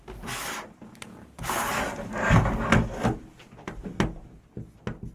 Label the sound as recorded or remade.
recorded